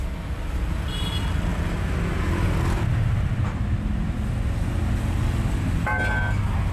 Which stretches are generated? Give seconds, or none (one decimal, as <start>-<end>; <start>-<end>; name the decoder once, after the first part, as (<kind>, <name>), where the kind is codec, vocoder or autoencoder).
none